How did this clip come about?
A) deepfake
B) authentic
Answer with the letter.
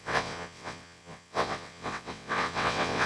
A